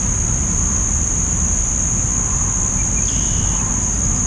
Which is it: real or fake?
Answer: real